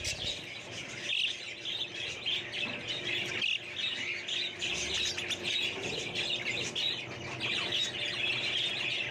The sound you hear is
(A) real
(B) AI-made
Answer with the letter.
A